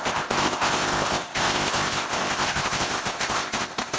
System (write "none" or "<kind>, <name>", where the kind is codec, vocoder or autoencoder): codec, ZipCodec